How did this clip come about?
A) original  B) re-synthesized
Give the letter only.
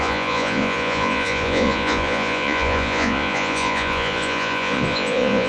B